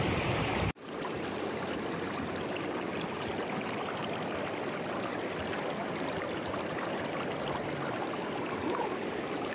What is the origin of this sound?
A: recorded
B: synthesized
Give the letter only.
A